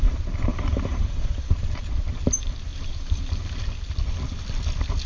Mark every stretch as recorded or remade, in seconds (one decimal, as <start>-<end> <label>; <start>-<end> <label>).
0.0-0.5 recorded; 0.5-1.8 remade; 1.8-2.7 recorded; 2.7-3.6 remade; 3.6-5.1 recorded